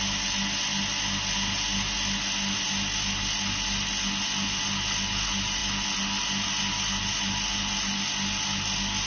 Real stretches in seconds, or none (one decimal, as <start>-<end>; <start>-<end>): 0.0-9.1